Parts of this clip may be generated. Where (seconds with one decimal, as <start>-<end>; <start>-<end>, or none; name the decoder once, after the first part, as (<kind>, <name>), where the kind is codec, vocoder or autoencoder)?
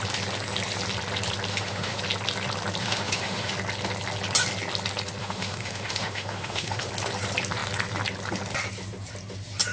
1.5-2.0 (autoencoder, DAC-VAE); 2.8-3.5; 5.2-6.9